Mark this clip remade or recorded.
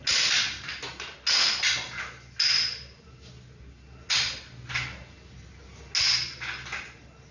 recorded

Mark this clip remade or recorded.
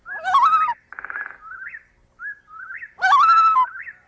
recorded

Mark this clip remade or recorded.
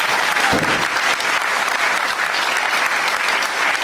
recorded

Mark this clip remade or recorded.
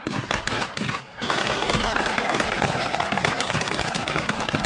remade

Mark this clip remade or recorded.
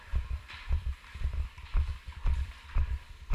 remade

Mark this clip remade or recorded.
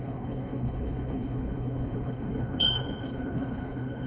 remade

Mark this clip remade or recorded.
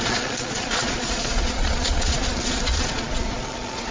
remade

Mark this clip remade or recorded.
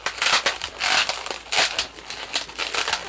recorded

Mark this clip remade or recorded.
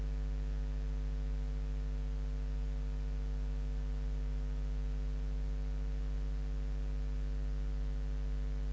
recorded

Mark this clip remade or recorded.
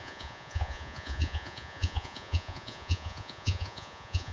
remade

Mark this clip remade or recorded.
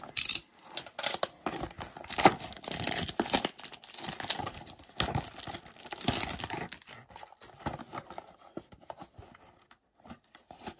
recorded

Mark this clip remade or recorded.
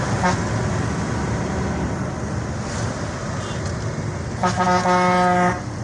recorded